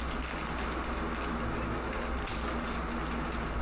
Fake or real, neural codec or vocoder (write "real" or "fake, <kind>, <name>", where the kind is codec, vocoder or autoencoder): real